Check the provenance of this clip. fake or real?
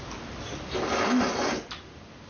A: real